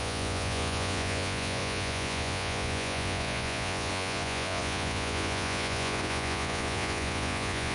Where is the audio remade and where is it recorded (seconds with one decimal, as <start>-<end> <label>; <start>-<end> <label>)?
0.0-7.7 remade

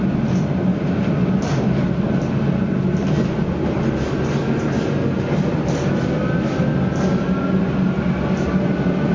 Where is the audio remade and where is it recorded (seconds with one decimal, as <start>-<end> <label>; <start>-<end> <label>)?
0.0-9.1 recorded

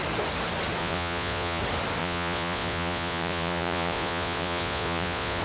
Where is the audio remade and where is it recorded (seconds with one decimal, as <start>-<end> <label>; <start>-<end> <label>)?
0.0-0.8 recorded; 0.8-1.6 remade; 1.6-2.0 recorded; 2.0-5.4 remade

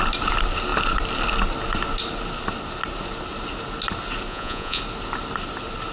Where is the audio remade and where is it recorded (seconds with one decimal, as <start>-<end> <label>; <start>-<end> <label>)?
0.0-4.3 recorded; 4.3-4.8 remade; 4.8-5.9 recorded

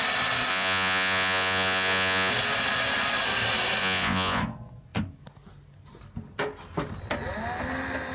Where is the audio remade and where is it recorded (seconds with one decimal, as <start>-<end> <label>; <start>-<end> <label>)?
0.0-0.5 recorded; 0.5-2.3 remade; 2.3-3.8 recorded; 3.8-4.4 remade; 4.4-8.1 recorded

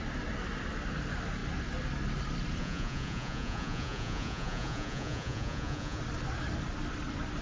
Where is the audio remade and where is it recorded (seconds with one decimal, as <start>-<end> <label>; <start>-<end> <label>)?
0.0-2.6 recorded; 2.6-6.0 remade; 6.0-7.4 recorded

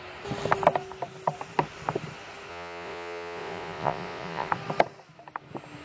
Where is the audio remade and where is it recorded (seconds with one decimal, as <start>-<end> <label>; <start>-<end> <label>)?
0.0-2.5 recorded; 2.5-4.5 remade; 4.5-5.8 recorded

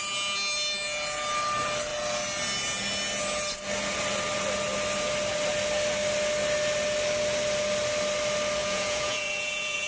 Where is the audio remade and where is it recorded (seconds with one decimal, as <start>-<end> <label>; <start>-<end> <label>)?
0.0-8.6 recorded; 8.6-9.9 remade